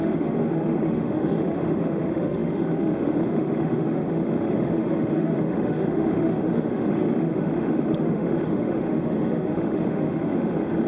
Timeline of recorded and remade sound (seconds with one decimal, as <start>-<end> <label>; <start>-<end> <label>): 0.0-10.9 remade